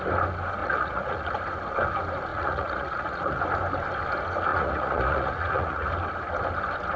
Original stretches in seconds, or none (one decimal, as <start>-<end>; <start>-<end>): 0.0-0.6; 1.3-2.3; 3.4-4.5; 5.9-7.0